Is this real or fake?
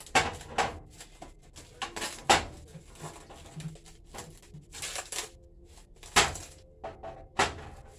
real